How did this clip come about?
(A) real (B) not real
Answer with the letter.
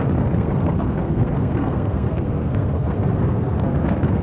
B